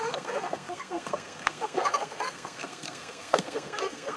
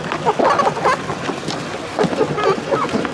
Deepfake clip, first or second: first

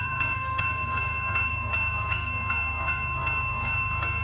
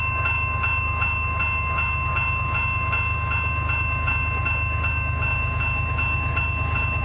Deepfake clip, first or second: first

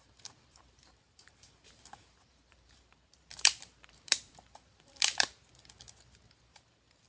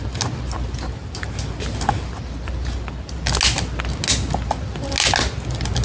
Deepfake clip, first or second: first